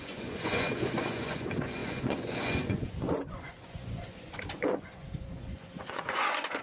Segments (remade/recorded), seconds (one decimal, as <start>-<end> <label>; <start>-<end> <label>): 0.0-6.6 remade